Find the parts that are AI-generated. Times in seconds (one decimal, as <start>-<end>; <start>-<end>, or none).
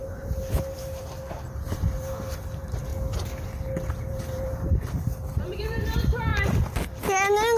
0.0-2.9; 3.9-6.3